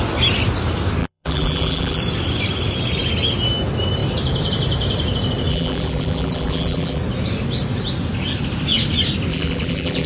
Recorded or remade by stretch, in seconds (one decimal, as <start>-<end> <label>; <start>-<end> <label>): 0.0-1.0 recorded; 1.0-2.0 remade; 2.0-5.5 recorded; 5.5-7.0 remade; 7.0-9.3 recorded; 9.3-10.1 remade